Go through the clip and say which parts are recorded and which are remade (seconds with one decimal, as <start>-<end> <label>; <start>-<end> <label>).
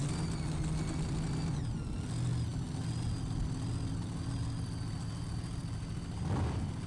0.0-6.9 recorded